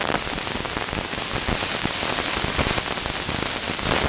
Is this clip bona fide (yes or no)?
yes